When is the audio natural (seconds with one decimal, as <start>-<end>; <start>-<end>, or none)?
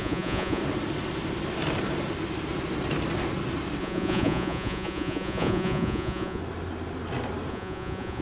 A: 0.6-3.8; 6.4-7.5